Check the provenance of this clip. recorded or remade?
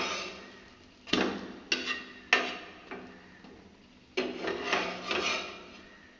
recorded